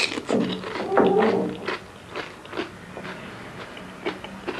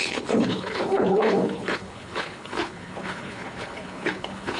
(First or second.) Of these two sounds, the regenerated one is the second